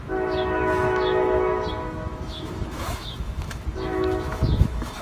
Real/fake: fake